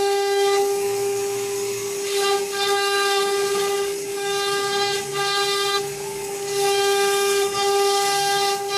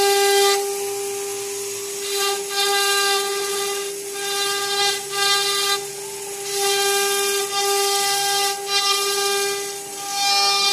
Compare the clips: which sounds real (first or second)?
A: second